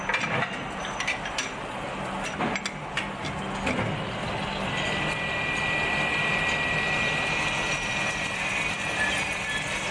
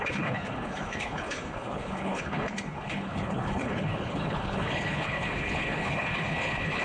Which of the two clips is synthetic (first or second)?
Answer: second